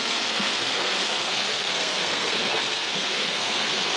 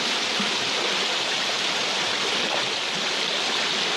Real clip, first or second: second